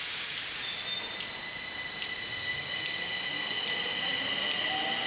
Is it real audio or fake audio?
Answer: real